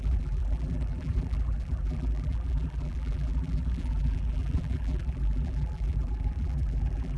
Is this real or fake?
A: fake